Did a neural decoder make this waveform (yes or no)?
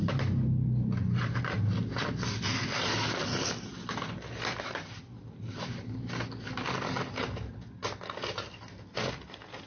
no